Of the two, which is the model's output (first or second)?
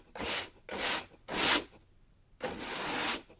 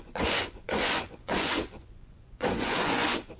second